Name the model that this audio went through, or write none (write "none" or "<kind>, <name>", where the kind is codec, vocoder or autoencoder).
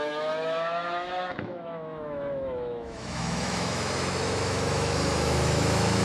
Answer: autoencoder, DAC-VAE